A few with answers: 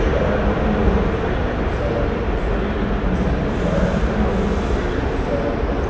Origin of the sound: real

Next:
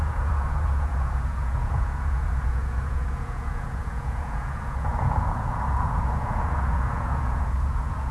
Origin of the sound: fake